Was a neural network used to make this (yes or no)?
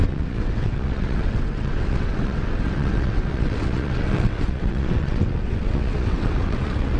yes